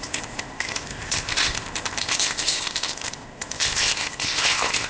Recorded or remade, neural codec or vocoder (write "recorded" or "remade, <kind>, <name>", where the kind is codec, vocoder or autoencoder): remade, codec, ZipCodec